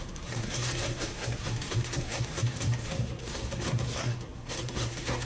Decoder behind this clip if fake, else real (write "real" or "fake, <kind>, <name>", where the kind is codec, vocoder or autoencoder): fake, codec, SNAC